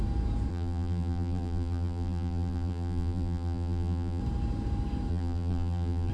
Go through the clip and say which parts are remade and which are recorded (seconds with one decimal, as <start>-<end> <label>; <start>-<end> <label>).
0.0-0.5 recorded; 0.5-4.2 remade; 4.2-5.1 recorded; 5.1-6.1 remade